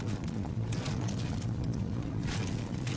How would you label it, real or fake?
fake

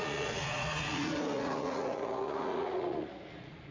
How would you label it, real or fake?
fake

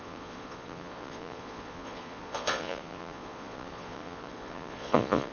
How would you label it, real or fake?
fake